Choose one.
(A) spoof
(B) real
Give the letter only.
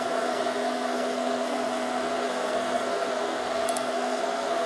A